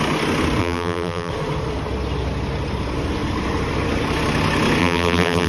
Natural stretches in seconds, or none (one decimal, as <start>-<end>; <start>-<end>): 0.0-0.6; 1.3-4.8